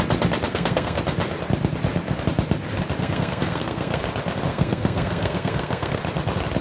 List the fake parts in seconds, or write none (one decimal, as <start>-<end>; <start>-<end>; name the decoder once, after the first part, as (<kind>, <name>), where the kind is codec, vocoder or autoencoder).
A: 0.5-1.0 (codec, SNAC); 3.0-4.0; 4.5-6.0